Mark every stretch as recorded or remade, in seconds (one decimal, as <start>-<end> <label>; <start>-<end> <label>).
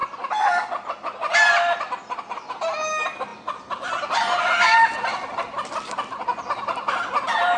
0.0-0.7 remade; 0.7-3.3 recorded; 3.3-5.1 remade; 5.1-7.6 recorded